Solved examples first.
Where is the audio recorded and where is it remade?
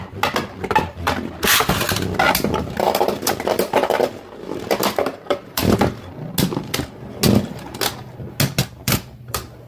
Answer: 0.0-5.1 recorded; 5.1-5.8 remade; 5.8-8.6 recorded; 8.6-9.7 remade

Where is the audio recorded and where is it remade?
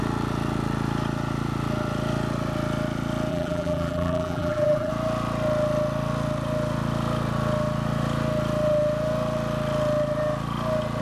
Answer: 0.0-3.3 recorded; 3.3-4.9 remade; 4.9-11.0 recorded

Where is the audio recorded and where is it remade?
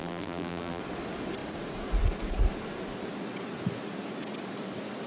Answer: 0.0-0.8 remade; 0.8-5.1 recorded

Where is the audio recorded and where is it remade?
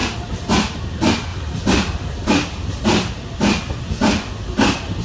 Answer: 0.0-1.3 recorded; 1.3-4.3 remade; 4.3-5.0 recorded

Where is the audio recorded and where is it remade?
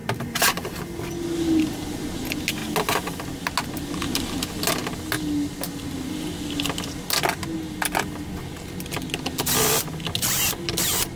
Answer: 0.0-0.8 remade; 0.8-11.2 recorded